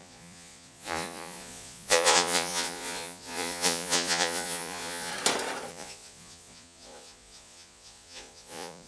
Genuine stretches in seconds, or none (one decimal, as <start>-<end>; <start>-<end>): 5.1-5.7